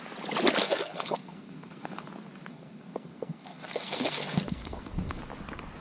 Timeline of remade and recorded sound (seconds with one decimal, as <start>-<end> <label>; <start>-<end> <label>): 0.0-0.6 recorded; 0.6-2.1 remade; 2.1-2.5 recorded; 2.5-5.2 remade; 5.2-5.8 recorded